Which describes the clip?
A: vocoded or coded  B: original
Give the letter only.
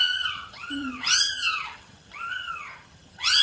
A